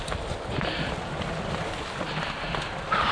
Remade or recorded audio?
recorded